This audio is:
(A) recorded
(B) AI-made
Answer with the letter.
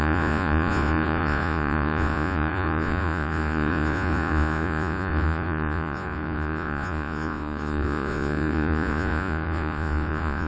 B